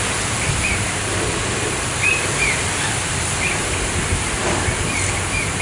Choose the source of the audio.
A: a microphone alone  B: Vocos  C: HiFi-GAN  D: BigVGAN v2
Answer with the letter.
D